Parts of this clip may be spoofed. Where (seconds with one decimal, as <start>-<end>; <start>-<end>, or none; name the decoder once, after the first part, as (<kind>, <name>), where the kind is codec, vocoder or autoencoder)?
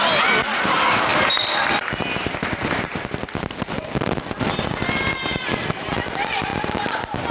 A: none